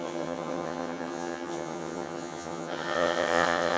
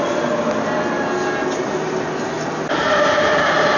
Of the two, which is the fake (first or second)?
first